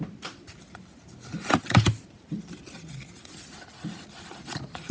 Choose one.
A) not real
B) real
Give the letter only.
B